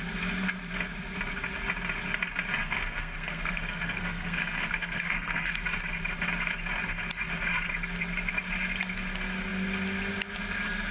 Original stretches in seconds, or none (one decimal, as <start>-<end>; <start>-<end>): 0.0-2.6; 5.5-10.9